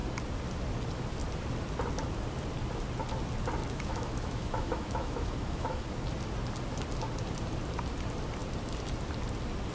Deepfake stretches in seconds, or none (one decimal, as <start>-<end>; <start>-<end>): 3.6-5.8